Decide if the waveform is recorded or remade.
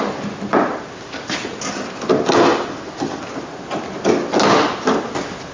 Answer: recorded